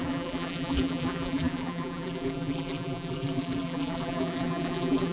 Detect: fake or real fake